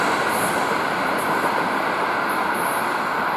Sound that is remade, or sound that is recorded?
remade